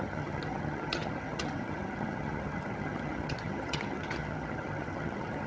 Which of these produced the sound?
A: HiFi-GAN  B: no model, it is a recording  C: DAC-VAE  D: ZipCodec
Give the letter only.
A